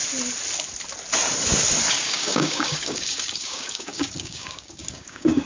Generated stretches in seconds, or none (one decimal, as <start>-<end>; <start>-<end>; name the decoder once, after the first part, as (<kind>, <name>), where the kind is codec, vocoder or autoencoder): 1.9-5.5 (codec, DAC)